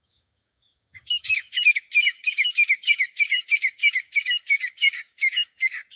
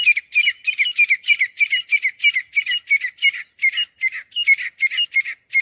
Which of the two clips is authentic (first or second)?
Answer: second